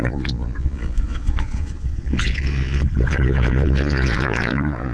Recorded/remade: remade